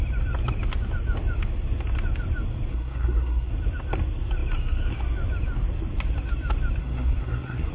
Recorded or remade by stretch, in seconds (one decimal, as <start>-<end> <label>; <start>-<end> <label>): 0.0-2.7 recorded; 2.7-3.5 remade; 3.5-6.8 recorded; 6.8-7.7 remade